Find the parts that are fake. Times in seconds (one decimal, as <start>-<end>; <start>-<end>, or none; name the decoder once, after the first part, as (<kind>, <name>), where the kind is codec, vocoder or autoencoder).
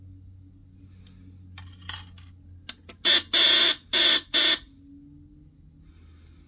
none